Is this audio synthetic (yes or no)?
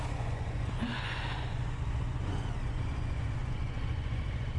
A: yes